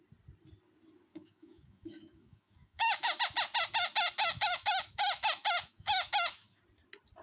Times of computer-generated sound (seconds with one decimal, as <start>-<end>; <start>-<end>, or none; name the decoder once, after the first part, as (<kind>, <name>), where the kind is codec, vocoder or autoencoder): 1.1-3.2 (autoencoder, DAC-VAE); 4.2-6.6